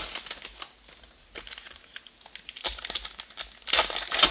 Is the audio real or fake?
real